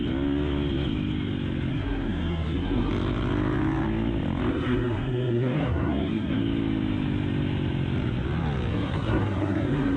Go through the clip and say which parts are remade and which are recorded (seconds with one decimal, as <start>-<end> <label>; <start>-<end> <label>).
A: 0.0-1.7 recorded; 1.7-2.9 remade; 2.9-4.5 recorded; 4.5-6.4 remade; 6.4-8.7 recorded; 8.7-10.0 remade